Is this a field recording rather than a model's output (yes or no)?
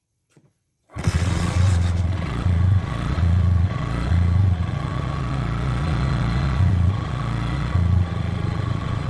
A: no